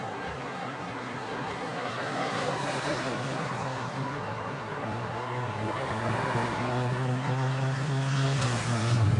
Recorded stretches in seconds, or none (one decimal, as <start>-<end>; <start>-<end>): none